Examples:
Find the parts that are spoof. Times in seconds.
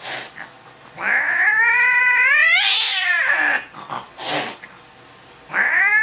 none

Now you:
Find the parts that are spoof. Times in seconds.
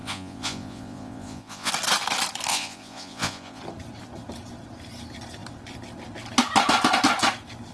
0.0-1.7 (vocoder, Vocos); 2.5-3.6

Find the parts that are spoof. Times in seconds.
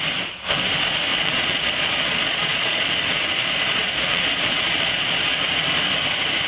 1.1-2.9 (vocoder, Vocos); 3.4-5.2